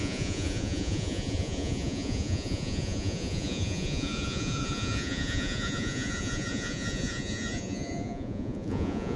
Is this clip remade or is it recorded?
remade